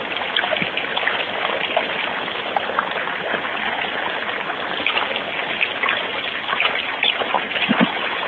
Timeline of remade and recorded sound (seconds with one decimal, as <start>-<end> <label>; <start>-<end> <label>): 0.0-0.9 recorded; 0.9-5.5 remade; 5.5-8.3 recorded